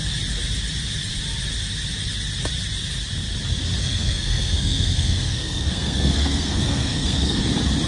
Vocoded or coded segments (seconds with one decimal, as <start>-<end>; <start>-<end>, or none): 3.8-7.4